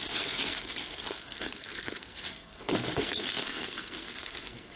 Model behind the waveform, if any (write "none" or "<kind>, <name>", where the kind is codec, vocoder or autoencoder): codec, SNAC